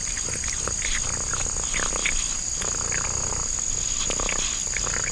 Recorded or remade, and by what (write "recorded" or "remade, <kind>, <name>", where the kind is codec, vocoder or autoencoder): recorded